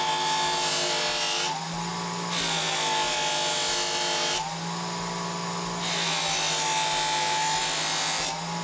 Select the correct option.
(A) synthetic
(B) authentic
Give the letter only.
B